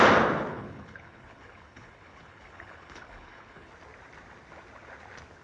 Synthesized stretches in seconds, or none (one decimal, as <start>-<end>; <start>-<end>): 0.5-3.7